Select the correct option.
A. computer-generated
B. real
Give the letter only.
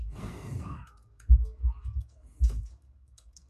A